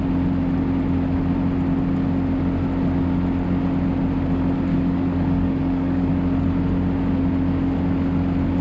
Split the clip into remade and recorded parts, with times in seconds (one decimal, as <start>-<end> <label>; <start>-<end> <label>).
0.0-4.7 recorded; 4.7-6.1 remade; 6.1-8.6 recorded